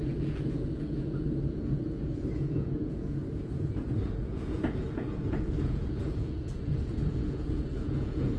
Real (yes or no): no